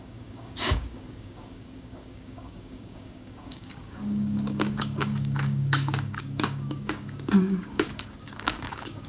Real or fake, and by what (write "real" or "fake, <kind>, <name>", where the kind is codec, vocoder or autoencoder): fake, codec, DAC